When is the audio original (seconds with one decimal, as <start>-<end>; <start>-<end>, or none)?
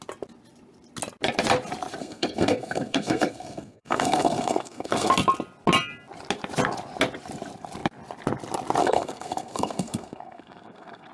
0.0-2.0; 5.1-8.8